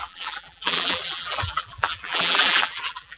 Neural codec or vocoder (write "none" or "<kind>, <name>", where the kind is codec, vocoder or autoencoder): vocoder, BigVGAN v2